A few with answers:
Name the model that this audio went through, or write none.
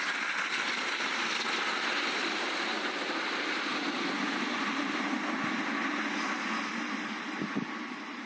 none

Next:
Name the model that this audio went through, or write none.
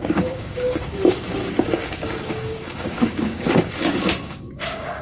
codec, DAC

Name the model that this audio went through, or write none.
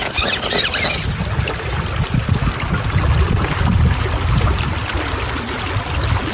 none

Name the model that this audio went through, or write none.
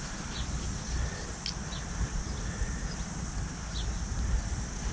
none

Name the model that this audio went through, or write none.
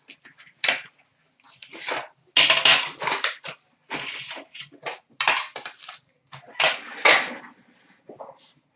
none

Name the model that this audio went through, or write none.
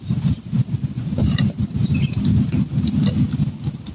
none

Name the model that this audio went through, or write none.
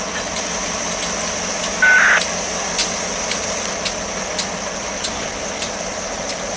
none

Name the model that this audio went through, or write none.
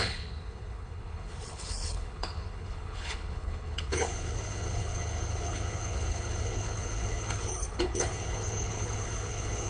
codec, HILCodec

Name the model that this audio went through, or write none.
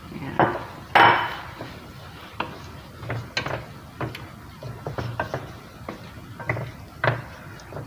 none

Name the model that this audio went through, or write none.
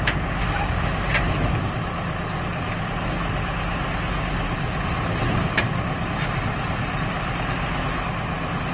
none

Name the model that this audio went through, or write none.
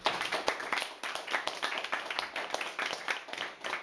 none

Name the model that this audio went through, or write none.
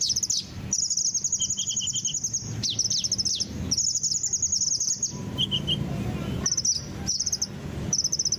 none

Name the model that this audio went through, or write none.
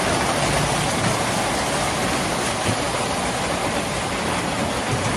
none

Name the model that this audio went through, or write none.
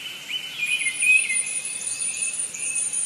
vocoder, BigVGAN v2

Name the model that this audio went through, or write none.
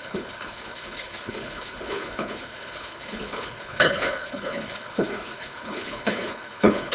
codec, HILCodec